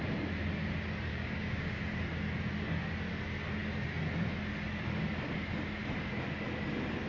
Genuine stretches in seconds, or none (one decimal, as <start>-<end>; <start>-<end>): 0.0-1.1; 1.8-7.1